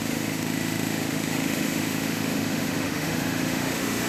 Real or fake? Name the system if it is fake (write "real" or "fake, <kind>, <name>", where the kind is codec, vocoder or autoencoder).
fake, autoencoder, DAC-VAE